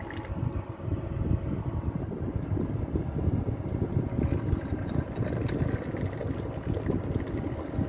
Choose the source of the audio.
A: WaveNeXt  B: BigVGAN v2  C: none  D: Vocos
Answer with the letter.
C